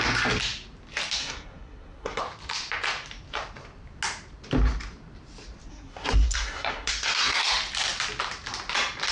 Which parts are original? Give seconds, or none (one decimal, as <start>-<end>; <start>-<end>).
0.0-1.2; 2.2-5.7; 7.5-9.1